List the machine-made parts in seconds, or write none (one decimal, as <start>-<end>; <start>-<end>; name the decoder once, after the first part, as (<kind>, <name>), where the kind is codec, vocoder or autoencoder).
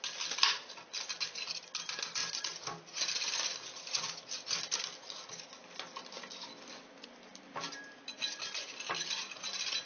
none